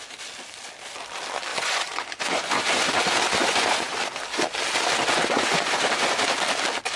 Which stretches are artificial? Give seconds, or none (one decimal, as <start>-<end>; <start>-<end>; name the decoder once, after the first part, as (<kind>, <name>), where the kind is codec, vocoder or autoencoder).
1.5-3.0 (vocoder, Vocos); 3.4-4.0; 5.2-6.2